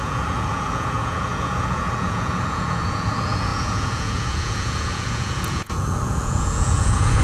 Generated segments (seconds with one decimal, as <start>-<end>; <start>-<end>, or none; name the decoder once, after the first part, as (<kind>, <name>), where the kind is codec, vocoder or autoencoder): 0.0-7.2 (vocoder, Vocos)